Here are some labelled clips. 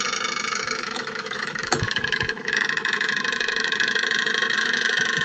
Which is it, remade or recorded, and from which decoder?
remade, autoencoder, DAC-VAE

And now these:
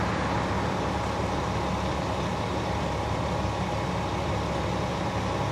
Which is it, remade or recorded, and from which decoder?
recorded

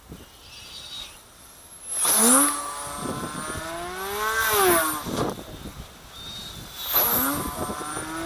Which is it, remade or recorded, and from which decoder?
recorded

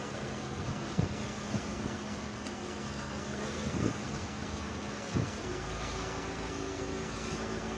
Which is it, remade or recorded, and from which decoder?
remade, codec, SNAC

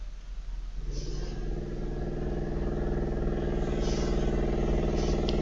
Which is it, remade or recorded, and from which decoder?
recorded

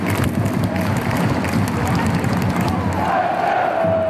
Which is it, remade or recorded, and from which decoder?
recorded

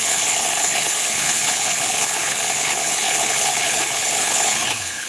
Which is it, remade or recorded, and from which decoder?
remade, codec, HILCodec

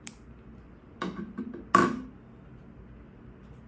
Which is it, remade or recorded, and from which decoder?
recorded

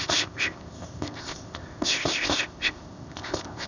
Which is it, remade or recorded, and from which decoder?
remade, codec, ZipCodec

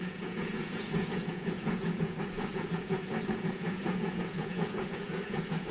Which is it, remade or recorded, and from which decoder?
remade, vocoder, Vocos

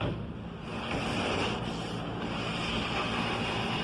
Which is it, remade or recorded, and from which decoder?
recorded